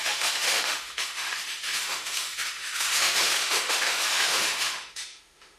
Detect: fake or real fake